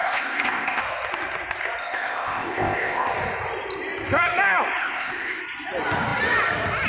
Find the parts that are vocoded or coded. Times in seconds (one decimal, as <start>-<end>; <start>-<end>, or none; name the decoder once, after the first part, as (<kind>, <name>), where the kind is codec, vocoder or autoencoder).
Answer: 0.0-0.8 (codec, ZipCodec); 1.8-3.1; 4.8-5.4